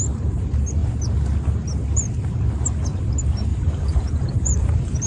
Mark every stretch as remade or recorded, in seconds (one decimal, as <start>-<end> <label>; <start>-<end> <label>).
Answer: 0.0-3.5 recorded; 3.5-5.1 remade

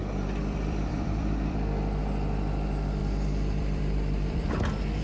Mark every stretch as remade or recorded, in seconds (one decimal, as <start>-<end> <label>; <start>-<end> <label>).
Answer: 0.0-2.0 remade; 2.0-3.0 recorded; 3.0-4.5 remade; 4.5-5.0 recorded